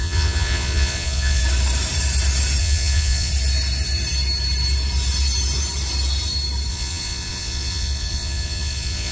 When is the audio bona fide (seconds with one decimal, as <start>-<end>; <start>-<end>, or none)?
1.4-2.6; 3.3-6.7